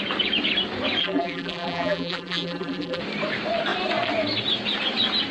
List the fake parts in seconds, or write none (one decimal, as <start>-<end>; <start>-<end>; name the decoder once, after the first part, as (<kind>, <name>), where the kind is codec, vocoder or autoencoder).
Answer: 1.0-3.0 (vocoder, BigVGAN v2)